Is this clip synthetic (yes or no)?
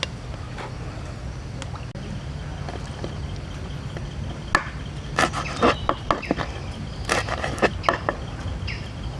no